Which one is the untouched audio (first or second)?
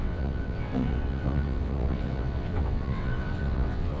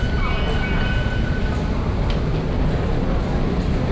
second